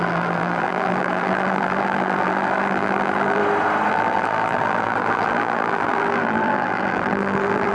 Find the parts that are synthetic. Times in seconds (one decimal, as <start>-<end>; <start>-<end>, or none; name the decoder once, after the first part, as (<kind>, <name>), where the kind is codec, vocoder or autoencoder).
0.0-3.4 (vocoder, BigVGAN v2); 3.9-7.7